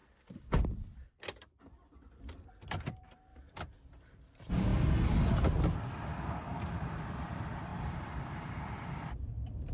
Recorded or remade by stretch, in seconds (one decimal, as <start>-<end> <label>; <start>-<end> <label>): 0.0-4.7 remade; 4.7-5.6 recorded; 5.6-9.7 remade